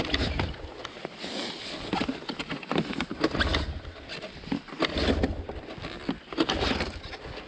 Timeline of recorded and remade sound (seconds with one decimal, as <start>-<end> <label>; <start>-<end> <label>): 0.0-7.5 recorded